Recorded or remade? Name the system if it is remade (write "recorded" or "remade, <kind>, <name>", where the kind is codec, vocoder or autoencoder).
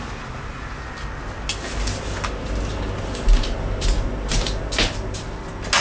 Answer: recorded